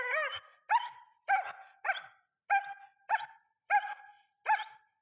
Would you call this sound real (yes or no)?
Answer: yes